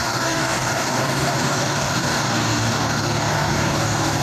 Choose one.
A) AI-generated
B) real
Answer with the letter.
A